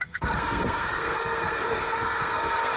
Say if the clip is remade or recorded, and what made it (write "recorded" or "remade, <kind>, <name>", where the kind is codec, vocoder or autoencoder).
remade, codec, SNAC